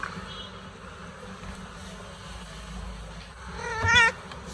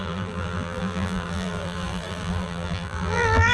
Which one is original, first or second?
first